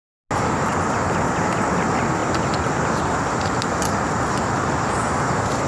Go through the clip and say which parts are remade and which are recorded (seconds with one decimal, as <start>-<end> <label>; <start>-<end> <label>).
0.0-5.7 recorded

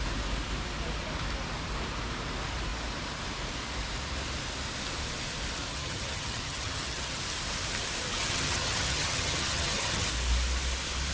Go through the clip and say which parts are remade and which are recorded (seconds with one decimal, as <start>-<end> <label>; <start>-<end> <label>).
0.0-5.7 recorded; 5.7-7.2 remade; 7.2-8.2 recorded; 8.2-10.1 remade; 10.1-11.1 recorded

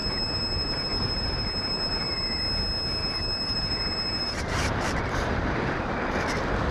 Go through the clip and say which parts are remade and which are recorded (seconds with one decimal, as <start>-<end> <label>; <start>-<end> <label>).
0.0-2.4 remade; 2.4-3.0 recorded; 3.0-5.9 remade; 5.9-6.7 recorded

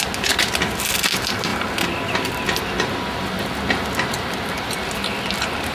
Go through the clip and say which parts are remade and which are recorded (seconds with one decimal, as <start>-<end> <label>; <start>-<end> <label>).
0.0-1.5 recorded; 1.5-3.4 remade; 3.4-5.7 recorded

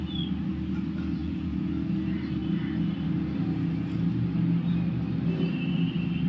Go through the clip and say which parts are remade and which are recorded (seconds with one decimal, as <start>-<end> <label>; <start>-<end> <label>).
0.0-1.2 recorded; 1.2-1.7 remade; 1.7-6.3 recorded